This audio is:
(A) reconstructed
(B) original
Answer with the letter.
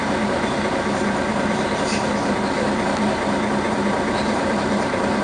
A